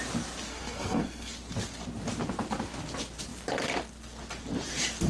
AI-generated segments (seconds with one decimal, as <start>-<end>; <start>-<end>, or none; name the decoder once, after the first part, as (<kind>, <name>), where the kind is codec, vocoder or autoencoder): 0.5-1.3 (codec, SNAC)